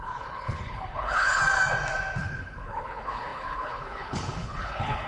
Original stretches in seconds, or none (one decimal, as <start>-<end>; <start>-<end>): 1.4-2.2